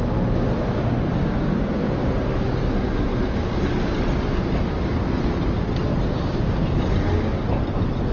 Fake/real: real